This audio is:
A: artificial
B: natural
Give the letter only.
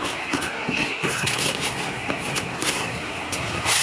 A